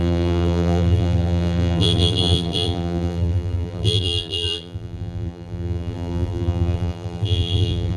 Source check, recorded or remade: remade